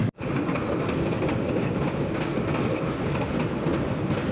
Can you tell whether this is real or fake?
real